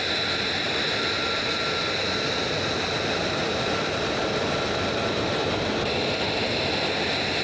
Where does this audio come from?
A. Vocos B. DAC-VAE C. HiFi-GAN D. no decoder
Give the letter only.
D